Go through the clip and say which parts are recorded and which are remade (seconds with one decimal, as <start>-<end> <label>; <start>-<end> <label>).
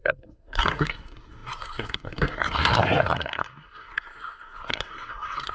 0.0-5.5 remade